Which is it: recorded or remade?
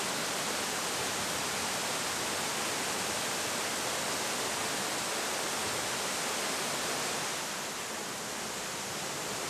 recorded